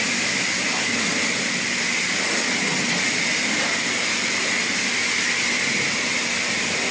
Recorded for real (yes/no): yes